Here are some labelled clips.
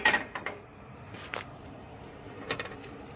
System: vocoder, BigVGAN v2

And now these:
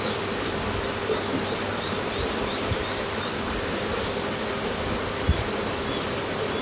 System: none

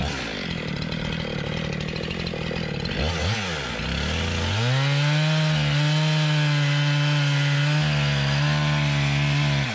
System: none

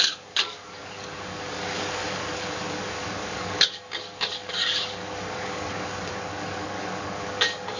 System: codec, DAC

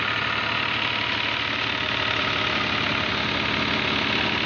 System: none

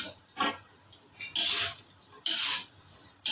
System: none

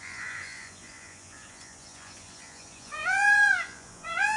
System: vocoder, Vocos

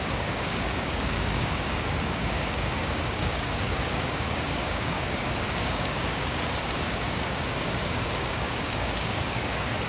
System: codec, DAC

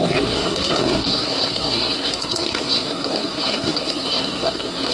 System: codec, SNAC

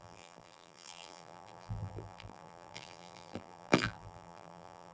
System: vocoder, BigVGAN v2